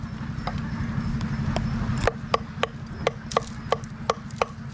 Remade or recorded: recorded